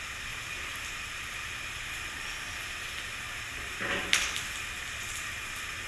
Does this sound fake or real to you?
real